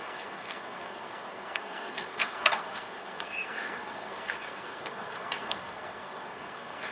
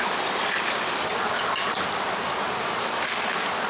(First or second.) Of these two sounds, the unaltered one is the second